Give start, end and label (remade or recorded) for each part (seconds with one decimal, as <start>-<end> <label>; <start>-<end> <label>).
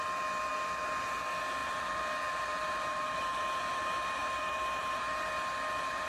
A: 0.0-1.6 recorded; 1.6-5.3 remade; 5.3-6.1 recorded